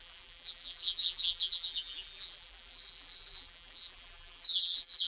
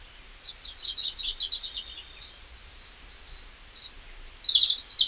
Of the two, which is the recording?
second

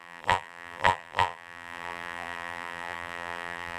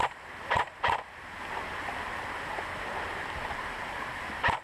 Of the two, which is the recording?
second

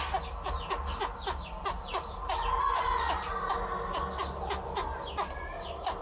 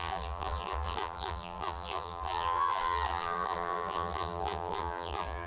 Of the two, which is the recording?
first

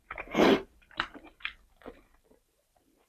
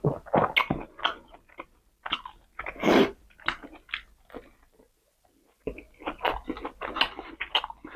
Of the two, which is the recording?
second